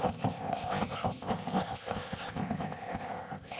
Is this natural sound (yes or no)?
no